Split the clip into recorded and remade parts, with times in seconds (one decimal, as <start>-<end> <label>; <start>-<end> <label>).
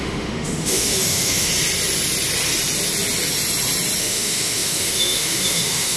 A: 0.0-1.5 remade; 1.5-4.0 recorded; 4.0-6.0 remade